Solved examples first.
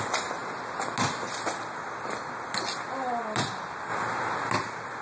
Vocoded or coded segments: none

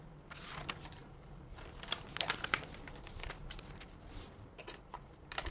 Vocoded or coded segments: 0.0-5.5 (vocoder, BigVGAN v2)

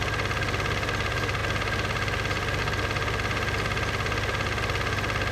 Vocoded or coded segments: none

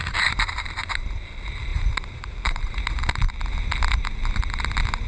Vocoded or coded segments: 0.0-0.7 (vocoder, BigVGAN v2); 1.7-2.7

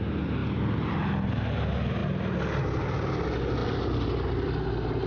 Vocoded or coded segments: none

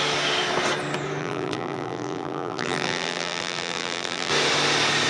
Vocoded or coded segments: 1.2-4.3 (vocoder, BigVGAN v2)

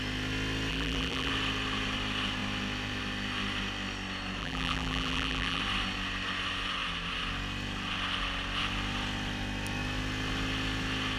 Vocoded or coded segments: 0.7-1.3 (vocoder, BigVGAN v2); 4.4-5.6